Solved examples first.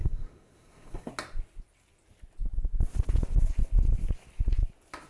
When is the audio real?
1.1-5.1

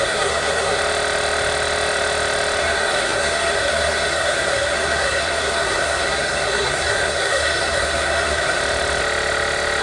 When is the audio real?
0.8-2.6; 8.6-9.8

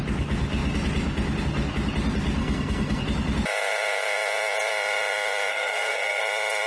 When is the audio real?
0.0-2.4; 3.0-5.5; 6.2-6.7